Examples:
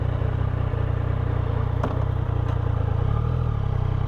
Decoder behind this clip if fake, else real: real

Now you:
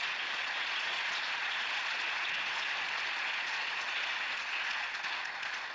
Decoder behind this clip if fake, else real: fake, vocoder, Vocos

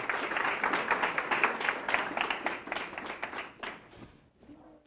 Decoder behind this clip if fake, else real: real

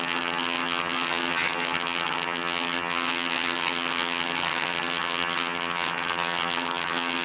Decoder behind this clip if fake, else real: fake, vocoder, HiFi-GAN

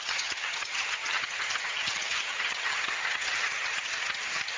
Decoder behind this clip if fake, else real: fake, vocoder, HiFi-GAN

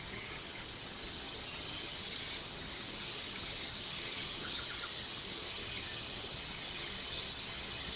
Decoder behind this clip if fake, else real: fake, vocoder, HiFi-GAN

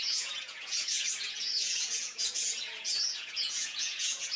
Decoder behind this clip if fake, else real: fake, vocoder, Vocos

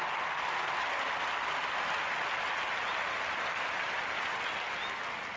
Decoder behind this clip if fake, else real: real